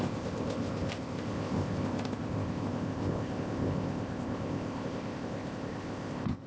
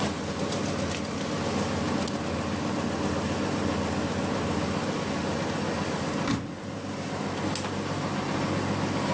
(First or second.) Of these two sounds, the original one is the second